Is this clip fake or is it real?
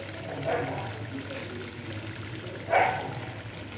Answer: real